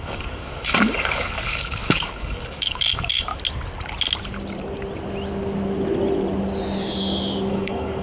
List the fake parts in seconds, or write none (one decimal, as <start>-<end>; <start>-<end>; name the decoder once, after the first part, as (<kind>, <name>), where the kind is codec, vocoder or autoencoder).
0.0-3.3 (codec, DAC); 7.5-8.0